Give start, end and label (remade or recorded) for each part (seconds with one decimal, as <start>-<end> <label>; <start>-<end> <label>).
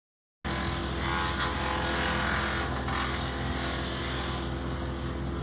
0.0-5.4 recorded